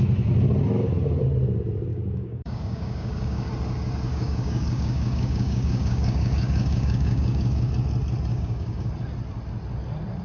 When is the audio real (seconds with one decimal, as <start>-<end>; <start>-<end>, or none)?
0.0-1.9; 3.5-4.1; 7.7-8.3; 8.9-10.2